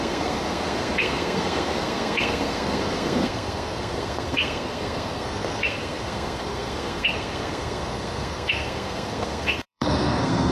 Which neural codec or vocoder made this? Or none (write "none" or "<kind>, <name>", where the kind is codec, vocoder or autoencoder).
codec, SNAC